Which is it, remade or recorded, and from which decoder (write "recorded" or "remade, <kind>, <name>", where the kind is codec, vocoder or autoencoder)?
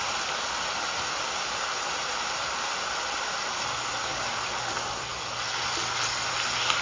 recorded